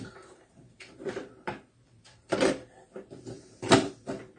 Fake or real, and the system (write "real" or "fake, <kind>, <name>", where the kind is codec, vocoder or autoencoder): fake, vocoder, BigVGAN v2